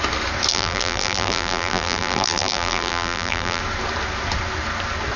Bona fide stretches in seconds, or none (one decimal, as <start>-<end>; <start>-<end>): 0.0-0.5; 3.6-5.2